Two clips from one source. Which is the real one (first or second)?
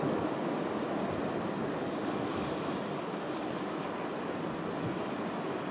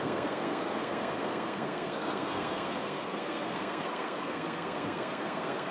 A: first